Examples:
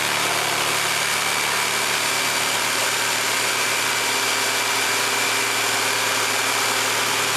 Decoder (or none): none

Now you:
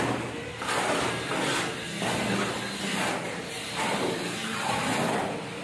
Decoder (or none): none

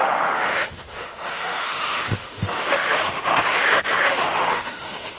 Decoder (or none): autoencoder, DAC-VAE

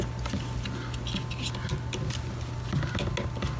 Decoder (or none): none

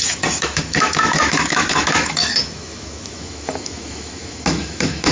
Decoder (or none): autoencoder, DAC-VAE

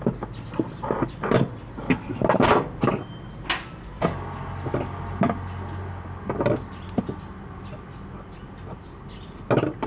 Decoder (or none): none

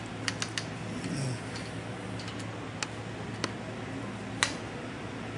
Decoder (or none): none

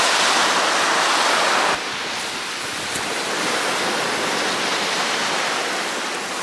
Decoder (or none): none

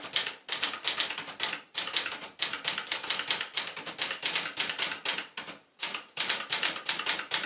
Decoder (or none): none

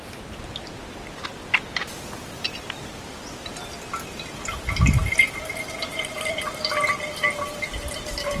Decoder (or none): none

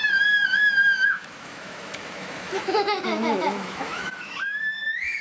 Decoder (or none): autoencoder, DAC-VAE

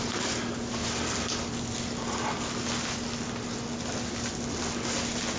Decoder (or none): none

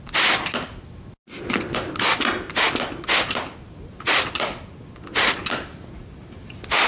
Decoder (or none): none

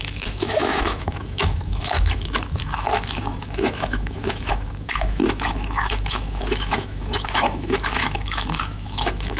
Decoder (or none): autoencoder, DAC-VAE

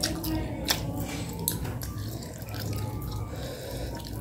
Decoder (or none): none